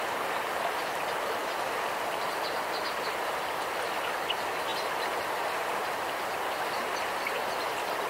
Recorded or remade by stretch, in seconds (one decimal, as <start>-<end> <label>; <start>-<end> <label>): 0.0-1.4 recorded; 1.4-2.9 remade; 2.9-4.7 recorded; 4.7-5.4 remade; 5.4-8.1 recorded